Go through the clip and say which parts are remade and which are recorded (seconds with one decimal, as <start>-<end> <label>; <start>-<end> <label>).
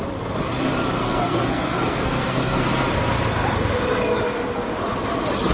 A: 0.0-1.0 recorded; 1.0-2.7 remade; 2.7-5.5 recorded